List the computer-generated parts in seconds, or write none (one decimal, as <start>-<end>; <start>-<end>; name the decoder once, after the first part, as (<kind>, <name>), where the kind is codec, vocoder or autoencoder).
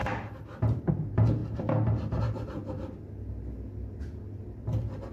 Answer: 0.0-0.9 (vocoder, BigVGAN v2)